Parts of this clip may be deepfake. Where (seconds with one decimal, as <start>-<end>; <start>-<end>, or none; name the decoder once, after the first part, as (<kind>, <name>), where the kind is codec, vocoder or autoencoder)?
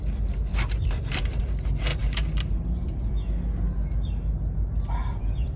0.5-1.4 (vocoder, BigVGAN v2); 1.9-3.1; 5.0-5.6